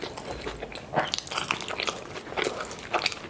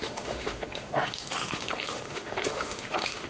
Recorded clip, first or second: first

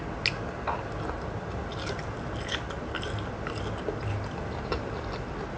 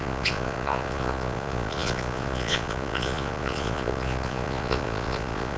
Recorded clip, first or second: first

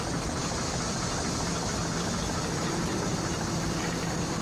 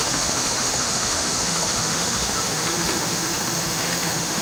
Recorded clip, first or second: first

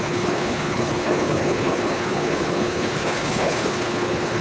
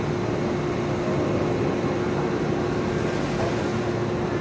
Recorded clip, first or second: second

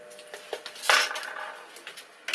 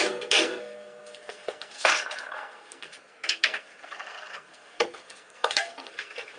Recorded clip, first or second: first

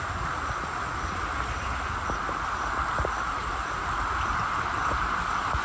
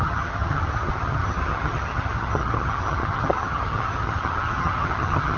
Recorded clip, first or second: first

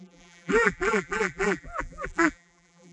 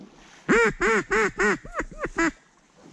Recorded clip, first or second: second